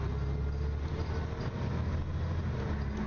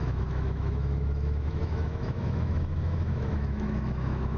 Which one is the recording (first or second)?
first